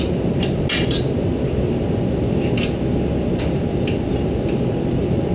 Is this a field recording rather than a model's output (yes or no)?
yes